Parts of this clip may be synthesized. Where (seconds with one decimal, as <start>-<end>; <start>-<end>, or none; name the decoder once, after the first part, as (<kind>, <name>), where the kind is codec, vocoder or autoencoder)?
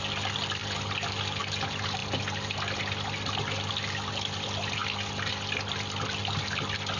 none